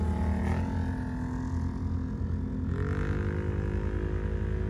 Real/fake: real